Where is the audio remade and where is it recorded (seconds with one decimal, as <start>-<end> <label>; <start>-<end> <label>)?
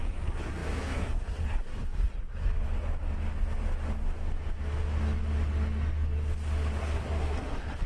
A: 0.0-2.5 remade; 2.5-6.8 recorded; 6.8-7.9 remade